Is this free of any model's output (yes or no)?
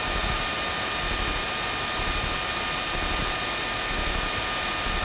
yes